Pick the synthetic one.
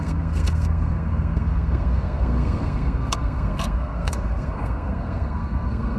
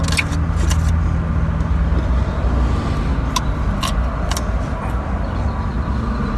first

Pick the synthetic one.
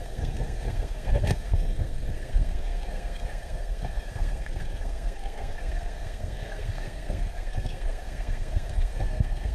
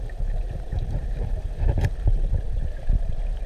first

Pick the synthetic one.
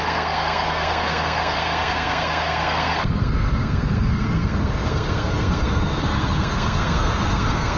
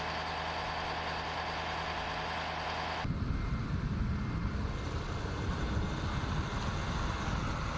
first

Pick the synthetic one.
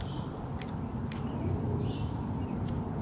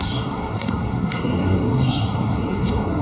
second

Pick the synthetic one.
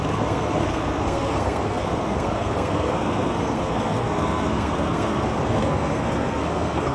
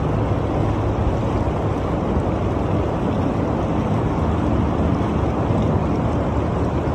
first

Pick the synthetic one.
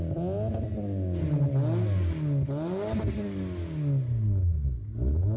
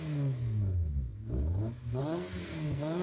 second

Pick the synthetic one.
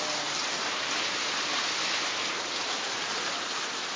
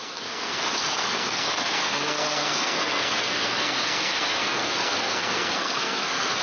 second